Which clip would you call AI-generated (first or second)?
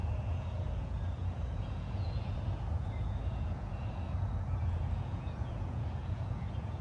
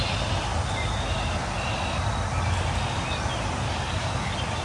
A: first